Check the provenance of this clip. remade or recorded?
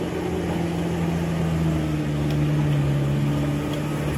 recorded